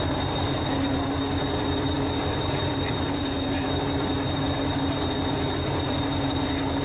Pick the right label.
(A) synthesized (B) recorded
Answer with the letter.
A